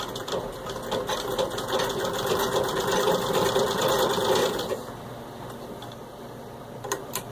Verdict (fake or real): fake